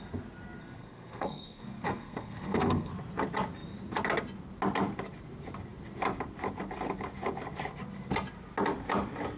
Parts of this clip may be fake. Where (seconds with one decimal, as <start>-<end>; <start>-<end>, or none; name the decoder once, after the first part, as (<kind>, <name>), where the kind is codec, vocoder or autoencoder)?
0.6-2.9 (codec, SNAC)